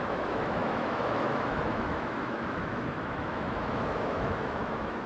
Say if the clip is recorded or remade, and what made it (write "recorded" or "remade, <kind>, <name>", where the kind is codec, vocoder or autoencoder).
remade, autoencoder, DAC-VAE